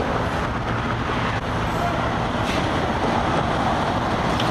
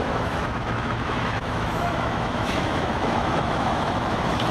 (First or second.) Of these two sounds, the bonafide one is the first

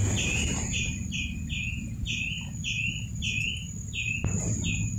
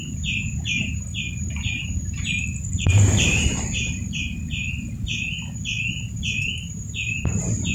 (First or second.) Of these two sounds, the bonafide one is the first